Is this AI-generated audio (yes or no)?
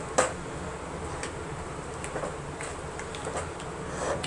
no